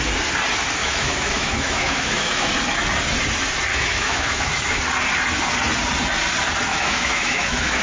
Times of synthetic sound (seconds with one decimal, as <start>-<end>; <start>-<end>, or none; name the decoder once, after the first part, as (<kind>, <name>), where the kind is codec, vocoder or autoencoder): 0.8-2.5 (autoencoder, DAC-VAE); 3.7-4.8; 6.7-7.8